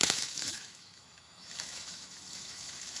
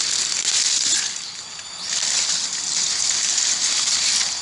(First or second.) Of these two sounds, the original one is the second